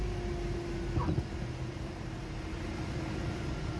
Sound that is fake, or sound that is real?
real